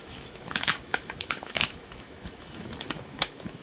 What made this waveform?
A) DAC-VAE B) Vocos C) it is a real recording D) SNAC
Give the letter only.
A